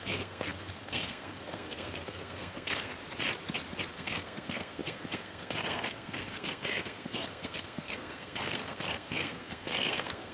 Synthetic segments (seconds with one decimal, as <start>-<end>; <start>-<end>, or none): 0.0-2.9; 3.9-10.3